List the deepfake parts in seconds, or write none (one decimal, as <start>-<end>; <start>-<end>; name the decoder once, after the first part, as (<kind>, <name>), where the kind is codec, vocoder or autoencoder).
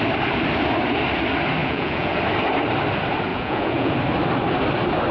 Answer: 1.6-2.2 (vocoder, Vocos); 3.3-3.9